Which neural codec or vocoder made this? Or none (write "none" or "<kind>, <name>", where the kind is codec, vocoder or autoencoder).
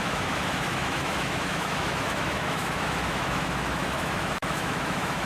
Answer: autoencoder, DAC-VAE